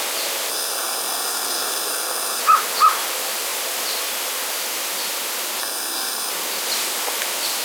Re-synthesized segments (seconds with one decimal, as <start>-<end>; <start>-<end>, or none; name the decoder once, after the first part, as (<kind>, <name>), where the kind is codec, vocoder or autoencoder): 0.5-2.4 (codec, SNAC); 5.6-6.3